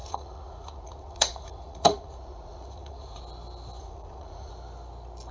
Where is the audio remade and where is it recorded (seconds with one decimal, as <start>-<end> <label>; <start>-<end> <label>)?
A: 0.0-3.2 remade; 3.2-3.8 recorded; 3.8-4.5 remade; 4.5-5.3 recorded